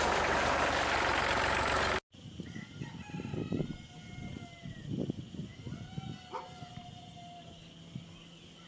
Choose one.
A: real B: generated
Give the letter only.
A